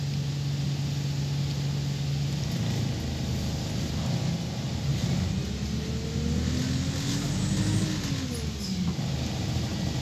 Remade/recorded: recorded